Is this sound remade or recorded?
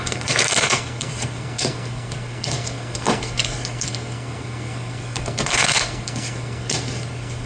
remade